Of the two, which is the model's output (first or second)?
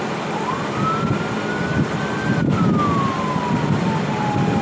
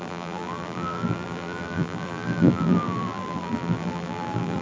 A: second